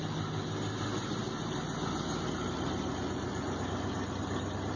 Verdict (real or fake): real